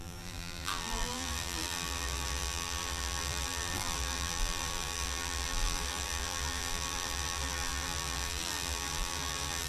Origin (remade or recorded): remade